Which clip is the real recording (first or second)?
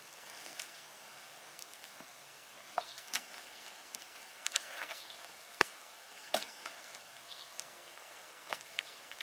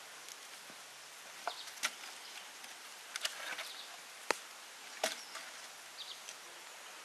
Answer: second